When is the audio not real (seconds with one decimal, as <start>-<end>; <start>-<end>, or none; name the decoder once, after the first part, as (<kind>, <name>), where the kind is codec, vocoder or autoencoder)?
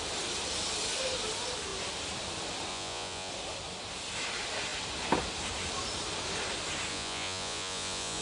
2.7-3.3 (vocoder, Vocos); 6.9-8.2